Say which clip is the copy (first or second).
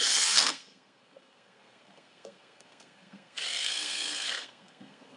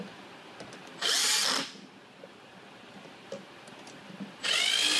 first